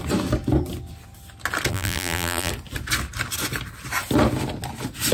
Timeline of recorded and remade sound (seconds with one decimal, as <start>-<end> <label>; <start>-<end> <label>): 0.0-1.7 recorded; 1.7-2.5 remade; 2.5-5.1 recorded